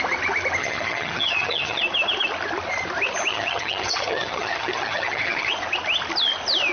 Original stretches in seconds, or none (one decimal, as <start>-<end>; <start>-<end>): 0.0-0.6; 1.8-3.3; 5.5-6.7